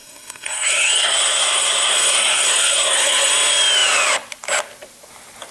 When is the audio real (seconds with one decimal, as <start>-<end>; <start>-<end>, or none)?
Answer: 3.3-5.5